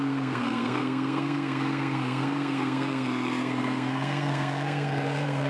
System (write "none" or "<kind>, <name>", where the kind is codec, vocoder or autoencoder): codec, SNAC